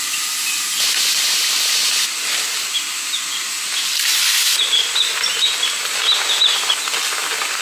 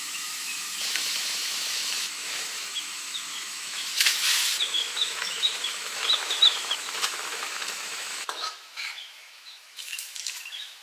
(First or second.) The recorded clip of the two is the first